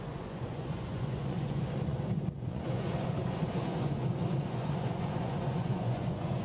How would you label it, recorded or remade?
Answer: remade